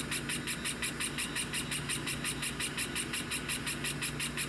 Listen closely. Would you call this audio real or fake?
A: real